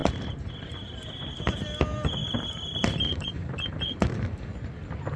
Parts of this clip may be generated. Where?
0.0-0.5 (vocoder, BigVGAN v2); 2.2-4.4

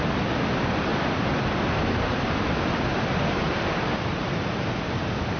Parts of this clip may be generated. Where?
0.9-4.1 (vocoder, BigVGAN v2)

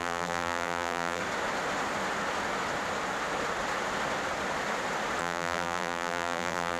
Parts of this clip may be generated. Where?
0.0-1.2 (vocoder, BigVGAN v2); 5.2-6.8

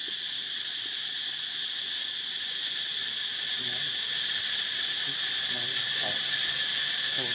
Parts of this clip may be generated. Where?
none